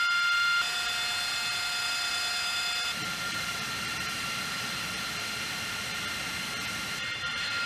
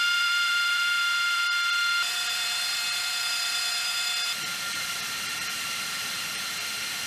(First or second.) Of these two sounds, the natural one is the first